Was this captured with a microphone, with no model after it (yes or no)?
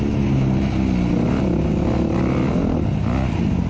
yes